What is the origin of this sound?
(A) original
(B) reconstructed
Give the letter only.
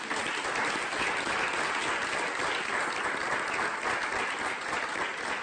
A